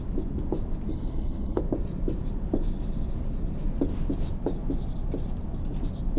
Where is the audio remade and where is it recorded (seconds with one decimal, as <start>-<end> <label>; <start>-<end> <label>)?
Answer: 0.0-0.9 recorded; 0.9-1.6 remade; 1.6-6.2 recorded